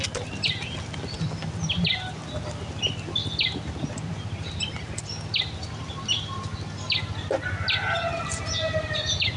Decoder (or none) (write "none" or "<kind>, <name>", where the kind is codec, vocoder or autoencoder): none